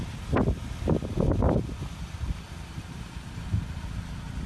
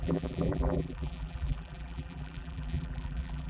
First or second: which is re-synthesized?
second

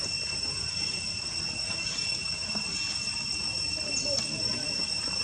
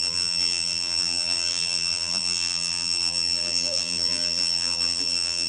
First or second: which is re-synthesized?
second